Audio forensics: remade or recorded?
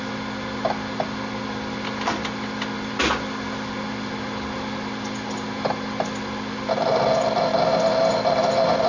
recorded